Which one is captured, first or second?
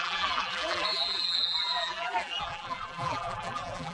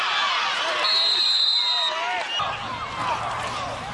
second